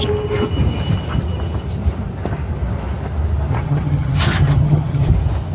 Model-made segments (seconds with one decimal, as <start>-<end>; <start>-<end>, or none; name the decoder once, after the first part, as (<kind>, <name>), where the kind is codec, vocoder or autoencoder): 3.5-5.1 (vocoder, HiFi-GAN)

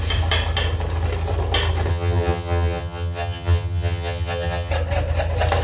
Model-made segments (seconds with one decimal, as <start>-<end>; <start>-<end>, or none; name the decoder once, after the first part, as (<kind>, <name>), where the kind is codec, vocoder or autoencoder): 1.9-4.7 (vocoder, HiFi-GAN)

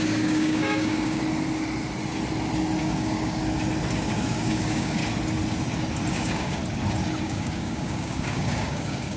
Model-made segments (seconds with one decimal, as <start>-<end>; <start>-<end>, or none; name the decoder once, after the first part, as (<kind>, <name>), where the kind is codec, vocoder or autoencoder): 0.0-1.2 (codec, DAC); 2.8-3.4; 4.0-5.0; 6.1-6.6; 7.2-9.2